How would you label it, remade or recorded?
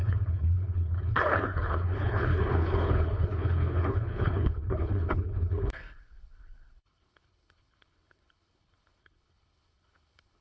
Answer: remade